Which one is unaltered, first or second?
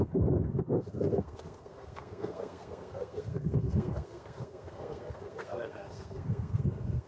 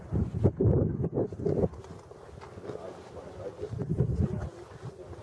second